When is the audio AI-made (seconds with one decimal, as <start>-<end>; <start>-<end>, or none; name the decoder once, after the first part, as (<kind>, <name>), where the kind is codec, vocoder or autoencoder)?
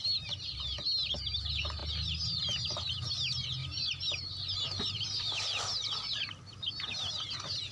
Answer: 3.6-5.7 (vocoder, BigVGAN v2)